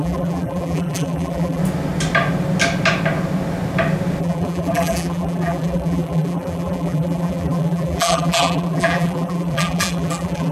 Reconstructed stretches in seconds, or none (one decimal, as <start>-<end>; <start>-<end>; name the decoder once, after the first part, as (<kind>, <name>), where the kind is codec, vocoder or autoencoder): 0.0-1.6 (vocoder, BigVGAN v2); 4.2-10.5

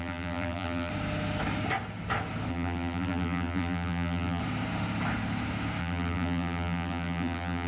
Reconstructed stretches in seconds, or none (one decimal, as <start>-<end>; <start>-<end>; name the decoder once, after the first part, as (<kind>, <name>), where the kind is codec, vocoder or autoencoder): 0.0-0.9 (vocoder, BigVGAN v2); 2.5-4.4; 5.8-7.7

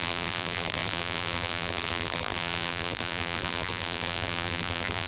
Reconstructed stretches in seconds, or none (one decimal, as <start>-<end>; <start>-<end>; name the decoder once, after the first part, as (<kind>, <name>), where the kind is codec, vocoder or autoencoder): 0.0-5.1 (vocoder, BigVGAN v2)